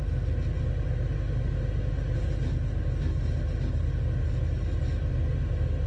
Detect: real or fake real